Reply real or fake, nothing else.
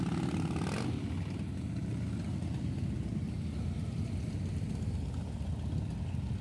real